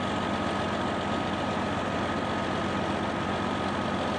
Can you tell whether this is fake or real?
real